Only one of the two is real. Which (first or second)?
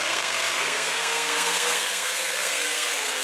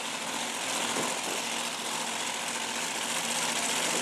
second